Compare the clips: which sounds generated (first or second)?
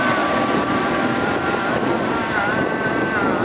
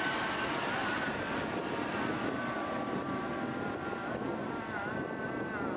first